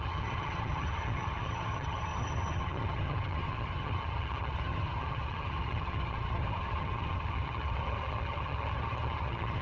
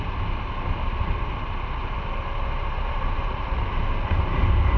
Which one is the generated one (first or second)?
first